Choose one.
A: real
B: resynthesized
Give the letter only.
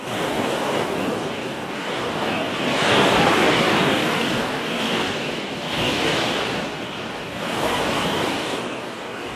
B